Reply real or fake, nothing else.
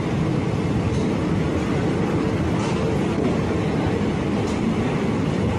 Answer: real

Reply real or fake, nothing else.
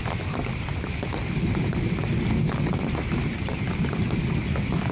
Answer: real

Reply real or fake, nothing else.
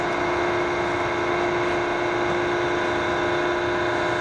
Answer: real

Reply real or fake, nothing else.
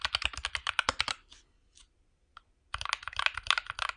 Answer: real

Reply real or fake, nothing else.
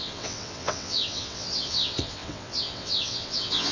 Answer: fake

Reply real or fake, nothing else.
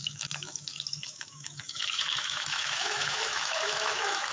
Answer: fake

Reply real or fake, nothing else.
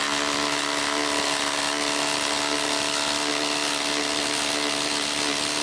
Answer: real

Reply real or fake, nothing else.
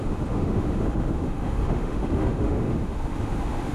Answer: fake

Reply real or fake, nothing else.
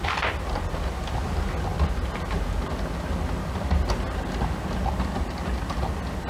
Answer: real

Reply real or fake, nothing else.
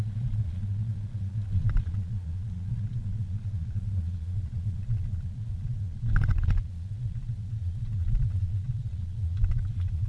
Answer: fake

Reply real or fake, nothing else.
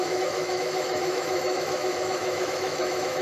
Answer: fake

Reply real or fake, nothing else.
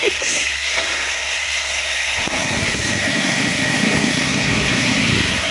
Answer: fake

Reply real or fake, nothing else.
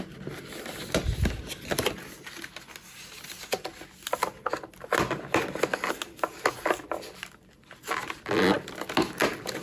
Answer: real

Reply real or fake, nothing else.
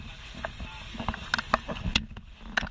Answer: real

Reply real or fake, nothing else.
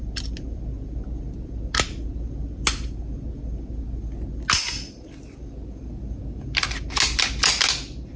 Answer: real